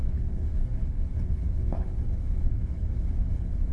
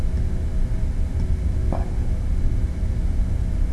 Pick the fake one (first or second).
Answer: first